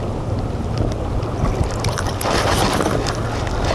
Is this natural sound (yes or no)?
yes